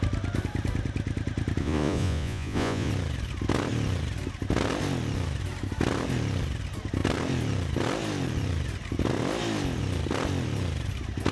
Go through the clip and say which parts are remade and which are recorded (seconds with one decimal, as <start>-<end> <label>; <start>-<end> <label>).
0.0-1.6 recorded; 1.6-2.9 remade; 2.9-11.3 recorded